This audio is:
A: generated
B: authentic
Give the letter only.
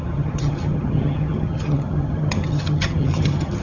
A